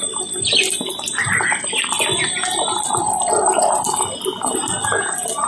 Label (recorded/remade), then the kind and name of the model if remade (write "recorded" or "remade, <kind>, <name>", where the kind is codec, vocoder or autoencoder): recorded